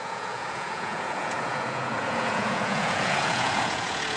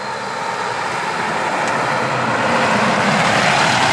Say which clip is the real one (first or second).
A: second